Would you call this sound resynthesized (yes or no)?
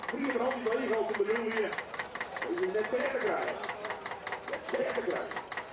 no